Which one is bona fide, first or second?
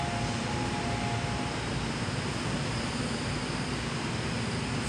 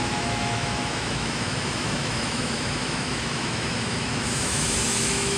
first